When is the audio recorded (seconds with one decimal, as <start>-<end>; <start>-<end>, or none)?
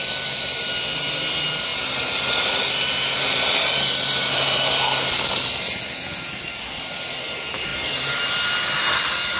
0.0-9.4